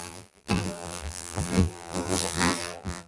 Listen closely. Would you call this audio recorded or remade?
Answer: remade